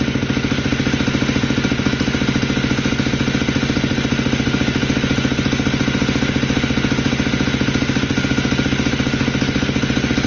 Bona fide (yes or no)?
yes